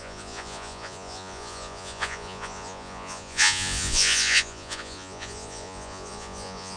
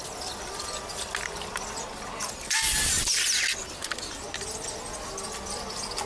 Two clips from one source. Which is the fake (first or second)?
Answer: first